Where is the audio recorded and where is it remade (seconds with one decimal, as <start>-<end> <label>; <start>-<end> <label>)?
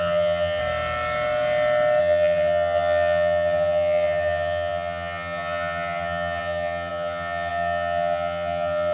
0.0-0.6 remade; 0.6-2.0 recorded; 2.0-8.9 remade